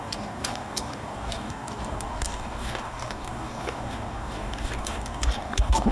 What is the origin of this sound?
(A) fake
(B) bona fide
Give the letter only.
A